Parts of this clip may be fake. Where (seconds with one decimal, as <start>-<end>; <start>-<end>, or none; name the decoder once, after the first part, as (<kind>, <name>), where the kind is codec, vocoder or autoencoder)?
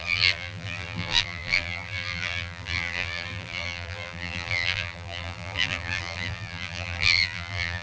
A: 0.0-7.8 (vocoder, BigVGAN v2)